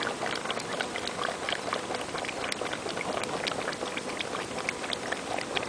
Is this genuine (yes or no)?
yes